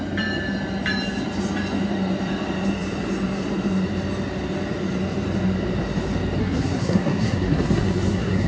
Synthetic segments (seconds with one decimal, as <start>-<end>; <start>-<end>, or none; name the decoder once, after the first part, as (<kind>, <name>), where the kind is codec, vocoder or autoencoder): 6.4-8.5 (codec, SNAC)